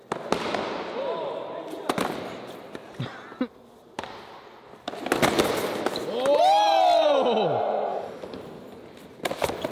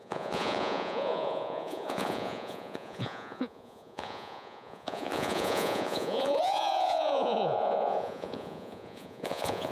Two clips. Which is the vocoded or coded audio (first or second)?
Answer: second